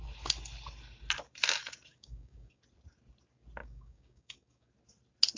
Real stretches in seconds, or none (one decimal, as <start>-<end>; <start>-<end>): 0.0-1.9; 2.6-3.6; 4.7-5.4